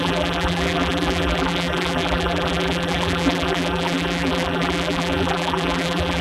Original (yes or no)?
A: no